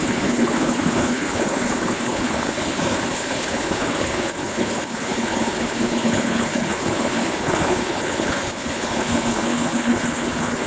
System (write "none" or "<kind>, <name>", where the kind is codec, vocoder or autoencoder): codec, HILCodec